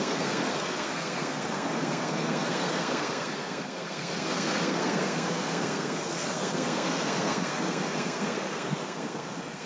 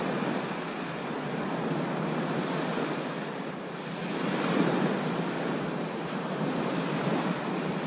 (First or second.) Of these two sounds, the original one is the second